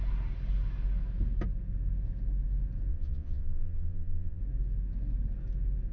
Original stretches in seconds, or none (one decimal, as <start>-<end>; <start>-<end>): 0.0-2.9; 4.4-5.9